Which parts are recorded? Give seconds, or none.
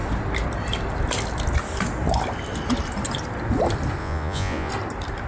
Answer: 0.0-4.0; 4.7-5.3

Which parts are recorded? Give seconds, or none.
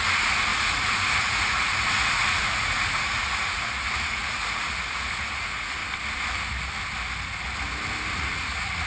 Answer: 5.8-8.1